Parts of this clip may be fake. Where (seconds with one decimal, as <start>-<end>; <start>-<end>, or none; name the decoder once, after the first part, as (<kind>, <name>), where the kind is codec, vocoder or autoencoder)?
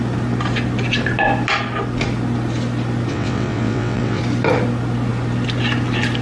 3.1-4.2 (vocoder, WaveNeXt)